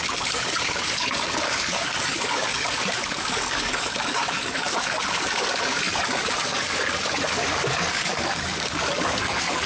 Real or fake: fake